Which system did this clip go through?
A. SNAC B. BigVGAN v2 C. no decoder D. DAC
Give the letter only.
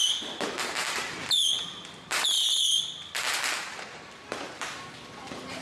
B